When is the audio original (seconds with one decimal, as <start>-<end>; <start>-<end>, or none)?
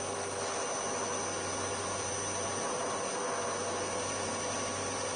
0.0-5.2